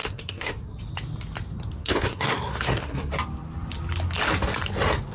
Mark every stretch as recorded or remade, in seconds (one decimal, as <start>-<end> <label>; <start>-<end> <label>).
0.0-0.8 remade; 0.8-1.8 recorded; 1.8-3.1 remade; 3.1-5.1 recorded